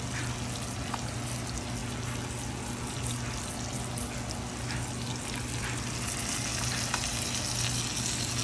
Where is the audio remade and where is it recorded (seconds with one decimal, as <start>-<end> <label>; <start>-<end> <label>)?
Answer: 0.0-8.4 recorded